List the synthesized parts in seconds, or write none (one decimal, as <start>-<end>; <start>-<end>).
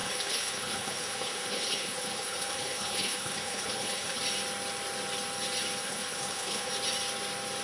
0.0-4.2; 5.8-6.7